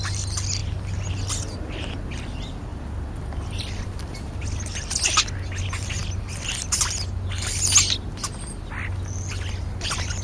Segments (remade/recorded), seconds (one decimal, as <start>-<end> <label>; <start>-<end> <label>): 0.0-10.2 recorded